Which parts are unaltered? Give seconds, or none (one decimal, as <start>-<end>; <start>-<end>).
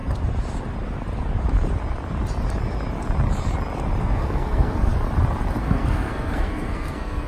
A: 0.0-4.0; 4.9-5.6